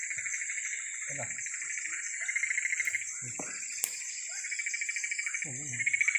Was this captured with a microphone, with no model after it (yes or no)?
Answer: yes